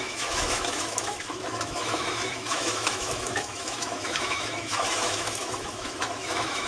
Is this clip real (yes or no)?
no